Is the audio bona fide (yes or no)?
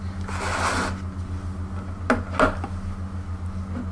yes